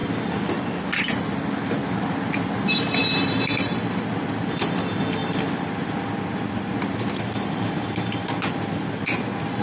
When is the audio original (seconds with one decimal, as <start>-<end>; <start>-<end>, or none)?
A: 0.0-3.0; 3.8-9.6

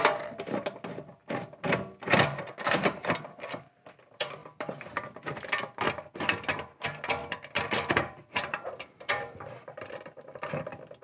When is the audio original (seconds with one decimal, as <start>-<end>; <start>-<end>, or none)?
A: 1.2-2.9

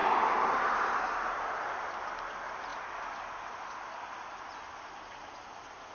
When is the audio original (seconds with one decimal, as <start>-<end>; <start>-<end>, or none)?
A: 1.8-2.7; 3.4-5.9